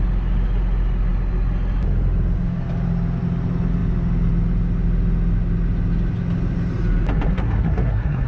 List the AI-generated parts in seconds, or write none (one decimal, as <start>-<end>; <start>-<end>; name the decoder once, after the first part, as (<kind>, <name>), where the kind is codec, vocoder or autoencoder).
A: 7.3-8.3 (codec, SNAC)